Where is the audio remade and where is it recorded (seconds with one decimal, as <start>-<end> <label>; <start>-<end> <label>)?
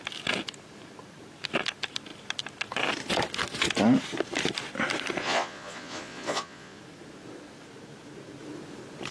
0.0-5.2 recorded; 5.2-6.8 remade; 6.8-9.1 recorded